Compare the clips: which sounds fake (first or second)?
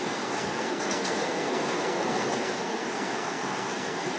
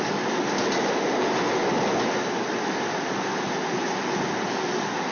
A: first